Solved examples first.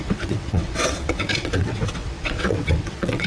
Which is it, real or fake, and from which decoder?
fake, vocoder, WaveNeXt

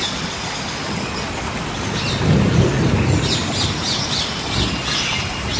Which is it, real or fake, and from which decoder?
real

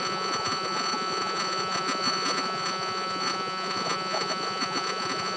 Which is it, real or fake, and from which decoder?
fake, vocoder, Vocos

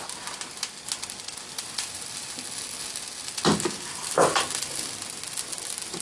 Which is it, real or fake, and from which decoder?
real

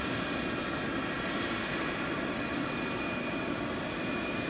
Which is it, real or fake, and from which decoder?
real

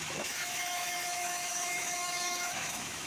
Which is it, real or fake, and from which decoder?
fake, autoencoder, DAC-VAE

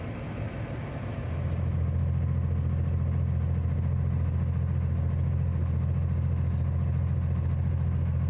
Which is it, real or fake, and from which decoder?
real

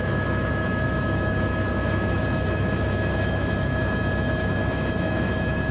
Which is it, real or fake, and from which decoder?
fake, autoencoder, DAC-VAE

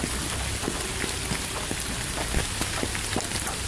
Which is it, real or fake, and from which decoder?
real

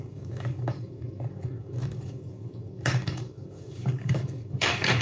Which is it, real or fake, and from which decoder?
fake, codec, DAC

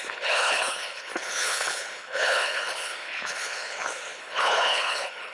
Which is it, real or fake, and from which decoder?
fake, codec, HILCodec